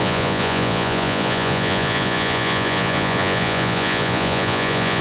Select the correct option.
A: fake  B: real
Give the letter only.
A